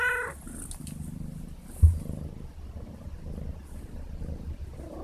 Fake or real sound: real